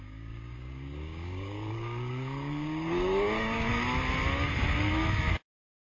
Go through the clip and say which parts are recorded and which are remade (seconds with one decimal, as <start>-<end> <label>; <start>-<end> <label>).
0.0-3.7 remade; 3.7-5.3 recorded; 5.3-5.9 remade